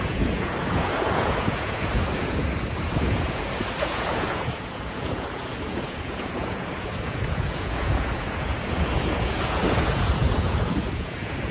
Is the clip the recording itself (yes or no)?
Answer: no